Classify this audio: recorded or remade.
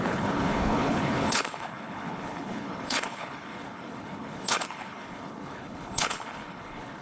remade